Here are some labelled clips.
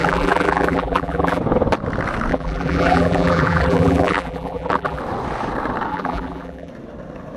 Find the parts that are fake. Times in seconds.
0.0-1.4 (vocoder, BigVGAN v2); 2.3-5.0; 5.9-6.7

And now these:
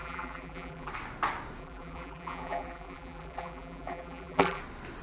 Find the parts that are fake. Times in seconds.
0.0-0.9 (vocoder, BigVGAN v2); 1.6-4.6

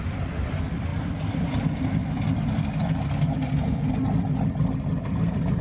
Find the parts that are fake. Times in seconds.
0.0-2.0 (vocoder, BigVGAN v2); 4.5-5.6